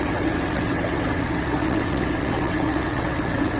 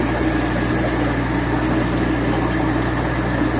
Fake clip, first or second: first